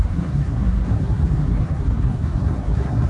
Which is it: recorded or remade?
remade